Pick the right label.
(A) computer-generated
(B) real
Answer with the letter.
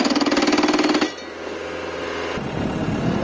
B